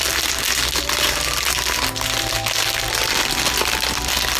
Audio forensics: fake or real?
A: real